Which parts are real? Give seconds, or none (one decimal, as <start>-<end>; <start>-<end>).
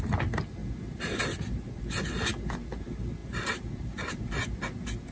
0.0-5.1